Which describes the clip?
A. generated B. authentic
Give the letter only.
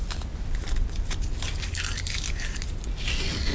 B